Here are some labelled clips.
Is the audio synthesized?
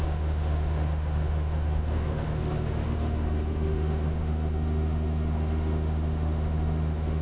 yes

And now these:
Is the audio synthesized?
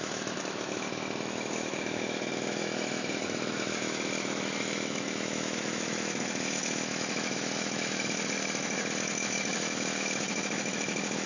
yes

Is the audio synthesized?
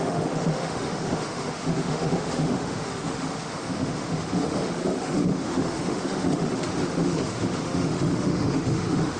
yes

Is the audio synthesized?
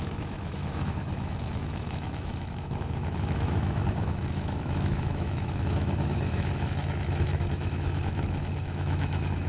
yes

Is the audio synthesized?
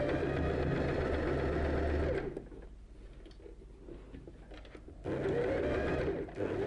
no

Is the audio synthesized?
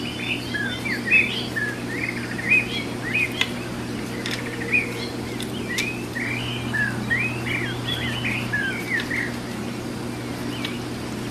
no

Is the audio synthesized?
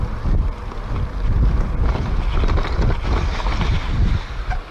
no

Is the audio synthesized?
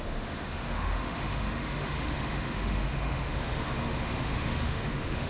yes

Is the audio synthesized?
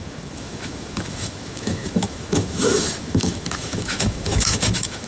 yes